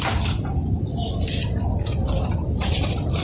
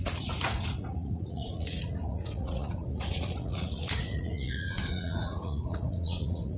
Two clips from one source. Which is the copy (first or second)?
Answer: second